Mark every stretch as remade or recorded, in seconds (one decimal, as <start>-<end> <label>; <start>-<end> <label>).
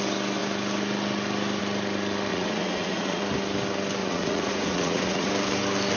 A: 0.0-2.3 recorded; 2.3-3.2 remade; 3.2-4.0 recorded; 4.0-5.3 remade; 5.3-6.0 recorded